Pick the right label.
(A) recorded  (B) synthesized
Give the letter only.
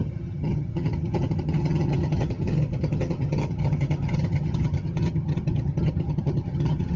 B